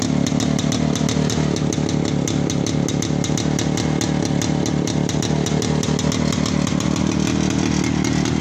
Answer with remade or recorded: recorded